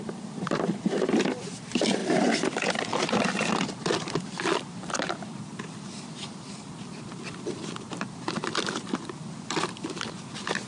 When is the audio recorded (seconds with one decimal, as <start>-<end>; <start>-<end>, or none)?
none

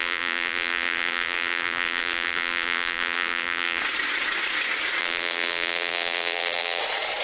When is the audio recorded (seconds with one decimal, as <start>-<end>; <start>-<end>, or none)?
3.8-5.0; 6.8-7.2

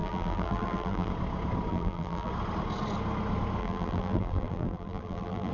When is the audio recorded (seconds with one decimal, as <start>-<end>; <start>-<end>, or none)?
1.1-1.7; 2.3-3.6